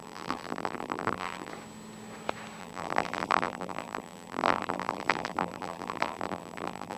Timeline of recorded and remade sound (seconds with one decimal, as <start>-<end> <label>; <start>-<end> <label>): 0.0-1.5 remade; 1.5-2.6 recorded; 2.6-7.0 remade